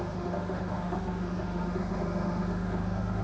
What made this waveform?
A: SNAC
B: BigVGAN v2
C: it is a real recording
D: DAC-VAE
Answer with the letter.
D